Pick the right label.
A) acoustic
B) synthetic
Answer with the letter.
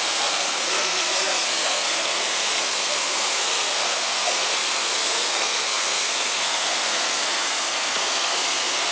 B